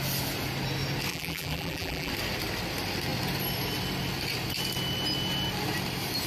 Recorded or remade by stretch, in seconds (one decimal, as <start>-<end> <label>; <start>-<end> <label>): 0.0-1.1 recorded; 1.1-2.1 remade; 2.1-6.3 recorded